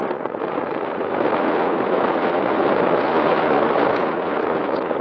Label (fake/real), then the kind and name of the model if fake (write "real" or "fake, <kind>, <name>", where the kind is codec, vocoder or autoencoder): fake, vocoder, Vocos